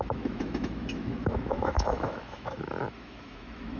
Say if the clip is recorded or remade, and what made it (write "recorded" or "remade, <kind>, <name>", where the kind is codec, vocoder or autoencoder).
remade, autoencoder, DAC-VAE